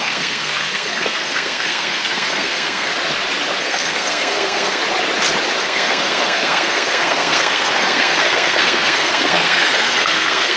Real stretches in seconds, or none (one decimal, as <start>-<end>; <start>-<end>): 2.9-3.6; 4.8-5.6